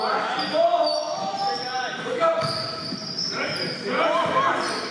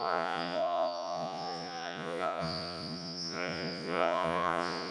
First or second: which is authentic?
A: first